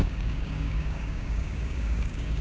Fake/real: fake